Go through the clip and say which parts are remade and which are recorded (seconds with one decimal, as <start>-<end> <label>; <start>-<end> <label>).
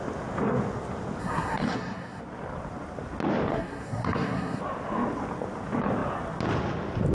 0.0-1.2 recorded; 1.2-2.2 remade; 2.2-3.5 recorded; 3.5-4.6 remade; 4.6-7.1 recorded